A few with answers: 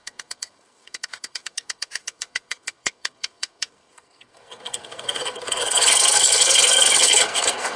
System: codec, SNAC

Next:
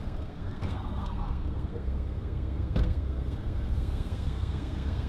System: codec, SNAC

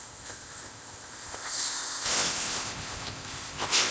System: codec, ZipCodec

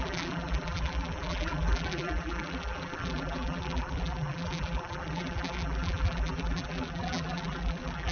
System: vocoder, BigVGAN v2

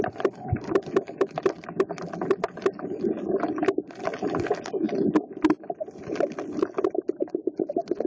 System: none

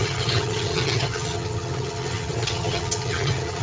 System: vocoder, HiFi-GAN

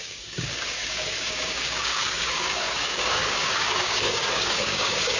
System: codec, DAC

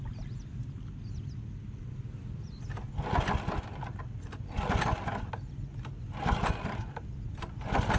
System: none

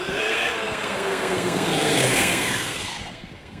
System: codec, SNAC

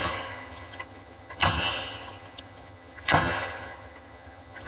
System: vocoder, HiFi-GAN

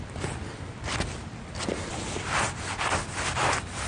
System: none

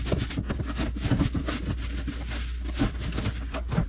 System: none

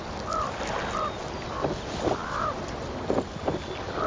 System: none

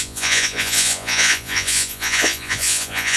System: vocoder, Vocos